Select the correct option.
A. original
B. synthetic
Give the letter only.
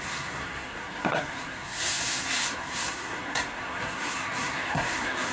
B